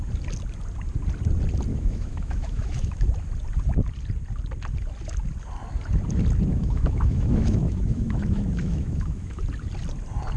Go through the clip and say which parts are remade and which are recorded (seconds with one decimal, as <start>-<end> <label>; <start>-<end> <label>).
0.0-1.7 recorded; 1.7-3.0 remade; 3.0-6.5 recorded; 6.5-9.4 remade; 9.4-10.4 recorded